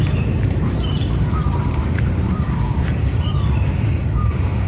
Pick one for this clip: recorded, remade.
remade